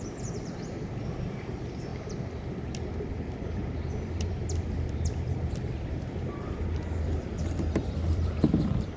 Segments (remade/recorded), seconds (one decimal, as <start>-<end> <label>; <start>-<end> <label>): 0.0-9.0 remade